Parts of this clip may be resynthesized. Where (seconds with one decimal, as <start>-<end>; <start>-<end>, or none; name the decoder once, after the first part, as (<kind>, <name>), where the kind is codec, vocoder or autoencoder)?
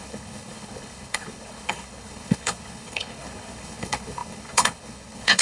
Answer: 0.0-5.4 (codec, HILCodec)